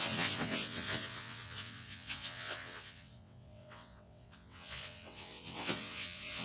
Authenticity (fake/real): fake